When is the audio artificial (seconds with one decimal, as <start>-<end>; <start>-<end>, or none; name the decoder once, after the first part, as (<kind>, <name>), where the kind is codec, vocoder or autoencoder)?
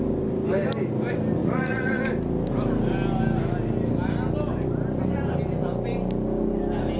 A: 1.4-2.0 (vocoder, Vocos)